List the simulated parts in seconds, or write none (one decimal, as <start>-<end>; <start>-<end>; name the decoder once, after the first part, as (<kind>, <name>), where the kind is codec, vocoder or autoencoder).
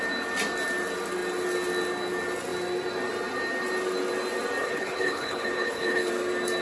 4.6-6.1 (codec, HILCodec)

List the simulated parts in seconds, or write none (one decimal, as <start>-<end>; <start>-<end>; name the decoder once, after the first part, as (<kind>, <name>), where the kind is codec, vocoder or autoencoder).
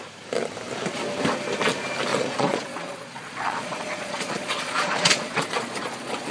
2.1-6.3 (vocoder, Vocos)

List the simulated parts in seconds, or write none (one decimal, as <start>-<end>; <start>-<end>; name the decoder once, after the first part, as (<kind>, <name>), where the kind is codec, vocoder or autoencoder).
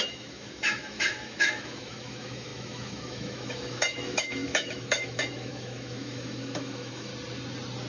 0.0-7.1 (autoencoder, DAC-VAE)